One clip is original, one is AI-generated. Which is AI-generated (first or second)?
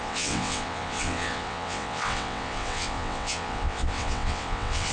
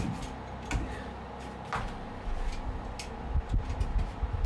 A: first